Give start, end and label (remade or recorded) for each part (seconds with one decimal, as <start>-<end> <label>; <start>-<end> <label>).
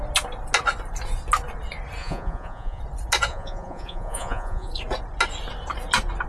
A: 0.0-2.0 recorded; 2.0-2.8 remade; 2.8-3.3 recorded; 3.3-4.7 remade; 4.7-6.3 recorded